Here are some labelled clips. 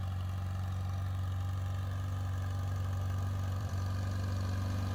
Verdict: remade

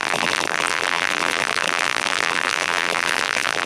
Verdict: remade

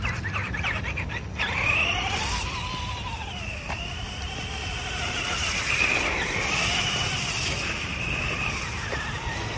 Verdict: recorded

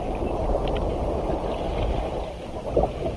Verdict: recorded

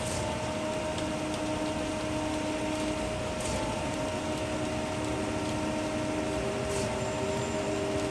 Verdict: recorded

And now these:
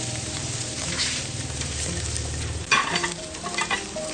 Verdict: remade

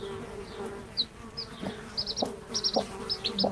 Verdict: recorded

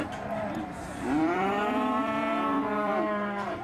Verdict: remade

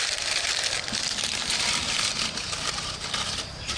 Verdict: remade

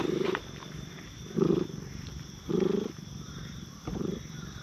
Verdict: remade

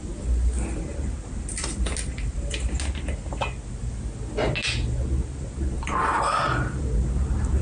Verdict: recorded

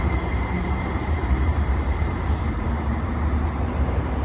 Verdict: remade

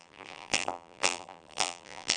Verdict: remade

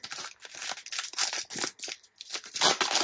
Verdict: recorded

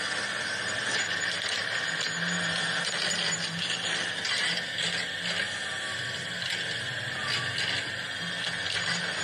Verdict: recorded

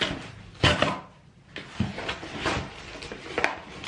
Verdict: recorded